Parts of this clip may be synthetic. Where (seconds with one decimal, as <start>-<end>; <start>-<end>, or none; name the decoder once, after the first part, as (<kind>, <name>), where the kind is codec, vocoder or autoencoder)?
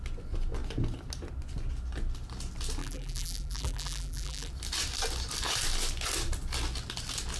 2.8-4.5 (vocoder, BigVGAN v2)